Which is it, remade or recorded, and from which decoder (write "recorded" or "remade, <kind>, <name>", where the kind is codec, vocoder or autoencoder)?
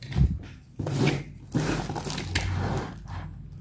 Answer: recorded